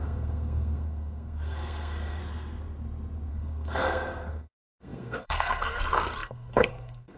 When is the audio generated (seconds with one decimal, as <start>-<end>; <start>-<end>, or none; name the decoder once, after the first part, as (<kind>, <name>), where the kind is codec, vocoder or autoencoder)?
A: 0.0-2.2 (codec, SNAC); 3.3-7.2